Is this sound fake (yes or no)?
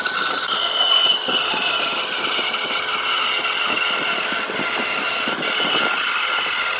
no